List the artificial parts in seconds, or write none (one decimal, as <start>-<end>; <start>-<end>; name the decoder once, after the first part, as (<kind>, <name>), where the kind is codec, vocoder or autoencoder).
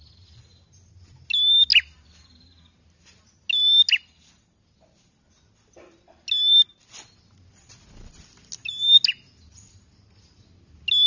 none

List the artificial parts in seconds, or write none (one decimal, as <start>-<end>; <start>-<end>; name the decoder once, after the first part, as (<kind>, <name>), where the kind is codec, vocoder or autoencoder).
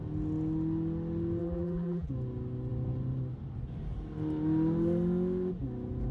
1.4-2.1 (vocoder, BigVGAN v2)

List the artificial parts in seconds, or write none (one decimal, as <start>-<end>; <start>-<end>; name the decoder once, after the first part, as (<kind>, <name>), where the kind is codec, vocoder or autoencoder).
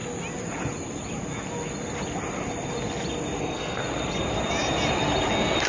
3.4-3.8 (codec, SNAC)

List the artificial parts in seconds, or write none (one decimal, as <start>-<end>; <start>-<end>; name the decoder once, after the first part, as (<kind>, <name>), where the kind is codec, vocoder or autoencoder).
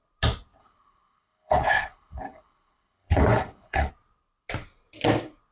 0.6-3.9 (codec, HILCodec)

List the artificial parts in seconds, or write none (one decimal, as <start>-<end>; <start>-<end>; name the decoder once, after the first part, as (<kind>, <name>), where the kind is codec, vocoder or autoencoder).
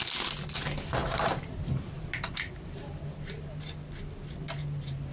1.0-1.9 (vocoder, BigVGAN v2)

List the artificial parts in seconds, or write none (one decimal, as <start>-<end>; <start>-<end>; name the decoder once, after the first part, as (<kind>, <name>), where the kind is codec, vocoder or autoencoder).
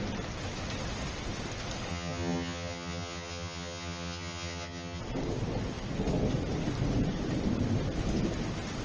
1.9-5.0 (vocoder, HiFi-GAN)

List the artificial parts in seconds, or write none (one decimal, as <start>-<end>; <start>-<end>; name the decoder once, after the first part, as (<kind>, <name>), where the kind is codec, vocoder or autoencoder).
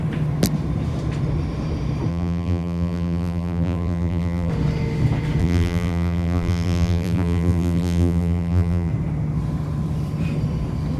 2.1-4.5 (vocoder, BigVGAN v2); 5.4-8.9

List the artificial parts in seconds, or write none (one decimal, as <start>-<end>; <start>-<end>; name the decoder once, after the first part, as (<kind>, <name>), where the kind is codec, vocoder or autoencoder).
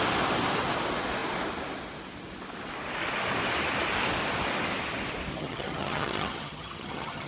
5.3-7.3 (vocoder, HiFi-GAN)